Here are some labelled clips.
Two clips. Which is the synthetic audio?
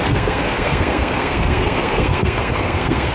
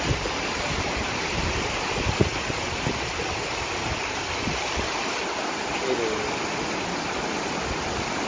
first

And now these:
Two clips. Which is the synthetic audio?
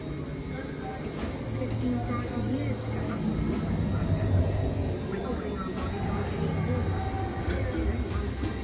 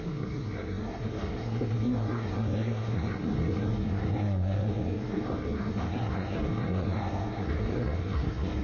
second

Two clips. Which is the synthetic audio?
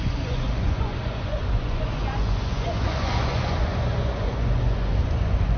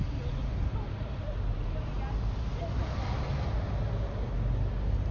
first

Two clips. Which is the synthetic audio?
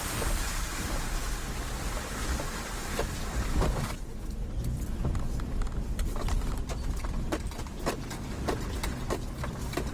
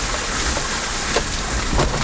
first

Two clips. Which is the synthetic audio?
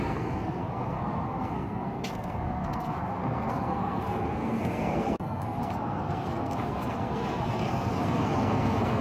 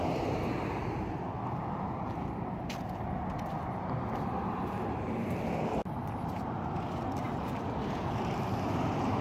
first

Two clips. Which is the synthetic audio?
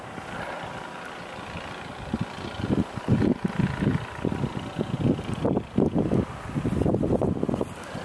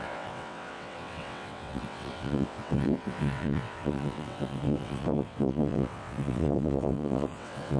second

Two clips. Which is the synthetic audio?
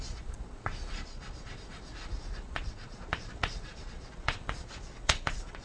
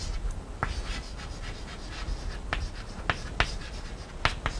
first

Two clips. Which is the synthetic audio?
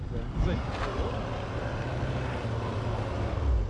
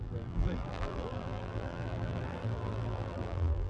second